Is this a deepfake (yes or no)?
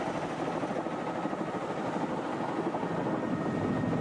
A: no